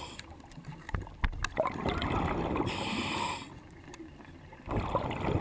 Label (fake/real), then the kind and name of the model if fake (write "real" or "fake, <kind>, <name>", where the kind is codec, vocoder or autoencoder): real